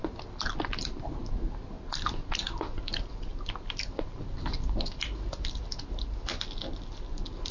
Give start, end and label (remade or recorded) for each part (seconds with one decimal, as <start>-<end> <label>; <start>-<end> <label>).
0.0-7.5 recorded

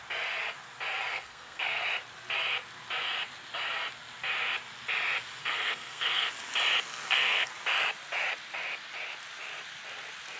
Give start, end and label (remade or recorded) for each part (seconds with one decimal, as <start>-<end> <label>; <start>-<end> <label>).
0.0-1.1 recorded; 1.1-1.8 remade; 1.8-5.4 recorded; 5.4-6.3 remade; 6.3-6.9 recorded; 6.9-7.5 remade; 7.5-10.4 recorded